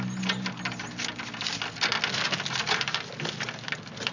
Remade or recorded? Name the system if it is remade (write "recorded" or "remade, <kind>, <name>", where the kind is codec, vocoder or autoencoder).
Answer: recorded